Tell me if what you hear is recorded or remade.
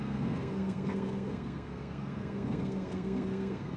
remade